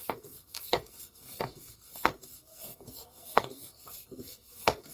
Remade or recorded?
remade